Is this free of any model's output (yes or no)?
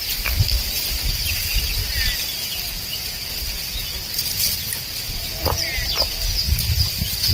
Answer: yes